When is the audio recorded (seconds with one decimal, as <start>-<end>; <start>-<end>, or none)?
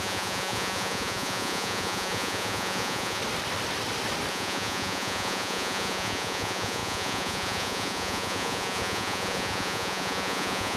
3.2-4.3